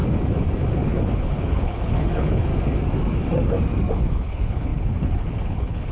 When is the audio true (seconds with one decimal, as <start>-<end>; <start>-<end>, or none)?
0.0-0.7; 2.5-3.9